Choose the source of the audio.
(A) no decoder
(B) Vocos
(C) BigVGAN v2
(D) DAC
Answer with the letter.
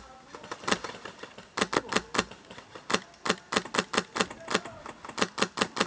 A